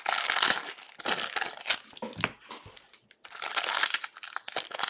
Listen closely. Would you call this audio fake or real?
real